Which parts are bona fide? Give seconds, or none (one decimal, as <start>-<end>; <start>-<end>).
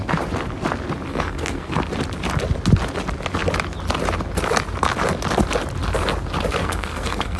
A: 0.0-1.1; 1.8-6.6